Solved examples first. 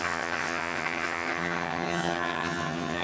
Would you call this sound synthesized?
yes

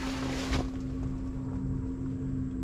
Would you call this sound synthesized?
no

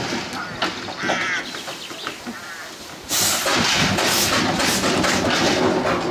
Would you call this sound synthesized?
no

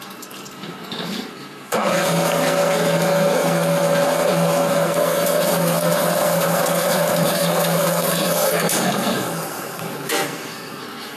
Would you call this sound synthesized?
yes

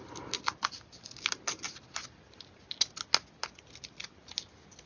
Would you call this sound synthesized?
no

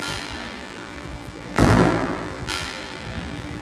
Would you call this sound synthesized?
yes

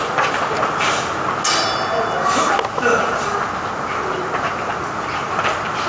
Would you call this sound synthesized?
no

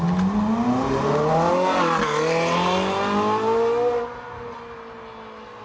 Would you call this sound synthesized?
no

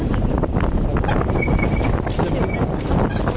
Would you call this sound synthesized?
no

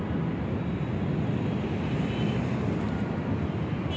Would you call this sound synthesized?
no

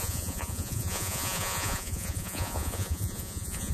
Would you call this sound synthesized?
yes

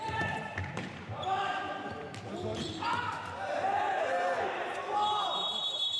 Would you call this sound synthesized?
yes